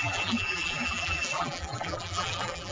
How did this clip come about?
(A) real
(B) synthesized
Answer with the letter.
B